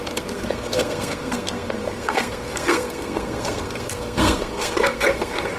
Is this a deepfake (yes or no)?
yes